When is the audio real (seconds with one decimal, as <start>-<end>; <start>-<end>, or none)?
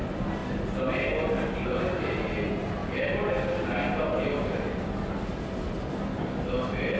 0.0-7.0